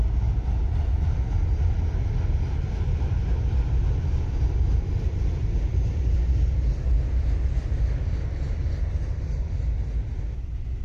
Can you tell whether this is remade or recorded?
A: recorded